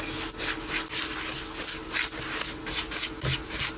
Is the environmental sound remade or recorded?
recorded